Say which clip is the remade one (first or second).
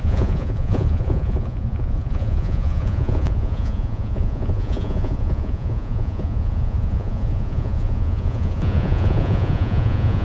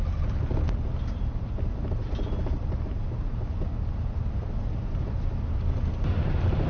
first